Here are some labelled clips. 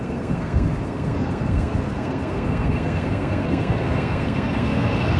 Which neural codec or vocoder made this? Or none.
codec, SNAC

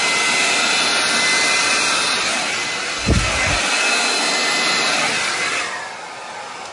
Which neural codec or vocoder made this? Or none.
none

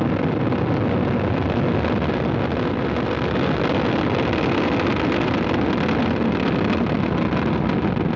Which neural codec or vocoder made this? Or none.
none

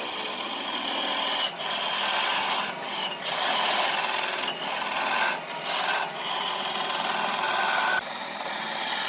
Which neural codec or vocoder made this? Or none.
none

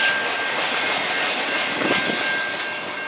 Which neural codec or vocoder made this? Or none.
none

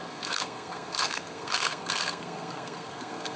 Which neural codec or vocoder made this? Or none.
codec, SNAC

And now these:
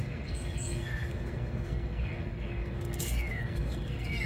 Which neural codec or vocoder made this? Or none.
codec, SNAC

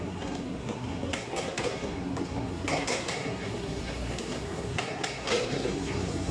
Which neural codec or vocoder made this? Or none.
codec, SNAC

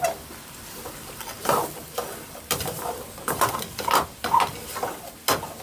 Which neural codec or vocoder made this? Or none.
none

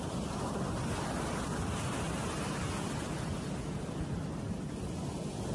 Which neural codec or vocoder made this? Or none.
none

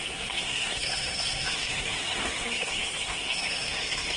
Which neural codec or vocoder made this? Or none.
codec, SNAC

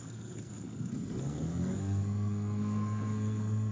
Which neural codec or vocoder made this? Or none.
codec, SNAC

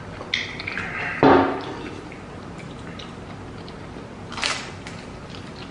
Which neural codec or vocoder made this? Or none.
none